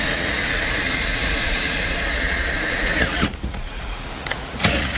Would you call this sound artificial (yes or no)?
yes